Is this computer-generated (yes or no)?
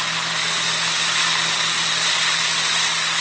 no